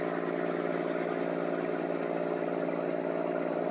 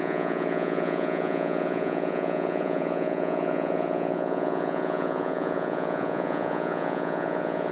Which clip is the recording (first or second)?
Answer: first